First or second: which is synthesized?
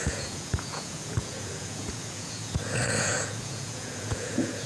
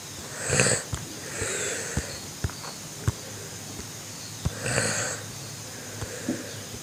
first